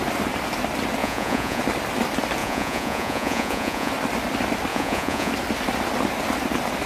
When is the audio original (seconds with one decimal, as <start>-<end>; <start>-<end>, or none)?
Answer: 0.0-1.0; 1.6-2.4; 3.9-4.7; 5.3-6.9